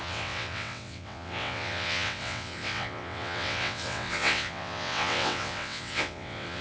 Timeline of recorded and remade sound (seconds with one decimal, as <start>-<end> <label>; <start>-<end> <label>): 0.0-6.6 remade